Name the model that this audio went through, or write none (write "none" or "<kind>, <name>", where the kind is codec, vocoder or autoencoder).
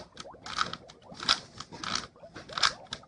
none